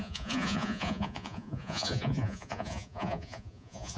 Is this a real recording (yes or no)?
no